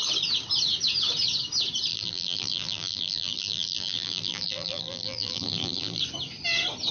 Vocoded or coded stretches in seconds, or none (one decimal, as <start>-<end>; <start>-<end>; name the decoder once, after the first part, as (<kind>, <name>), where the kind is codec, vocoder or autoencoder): 1.9-6.0 (vocoder, BigVGAN v2)